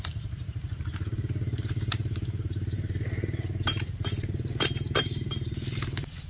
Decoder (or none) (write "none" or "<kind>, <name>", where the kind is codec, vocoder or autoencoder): vocoder, BigVGAN v2